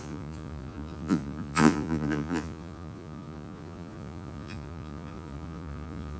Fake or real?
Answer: fake